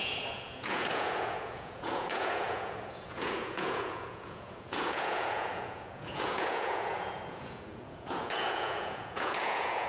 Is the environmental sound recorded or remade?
remade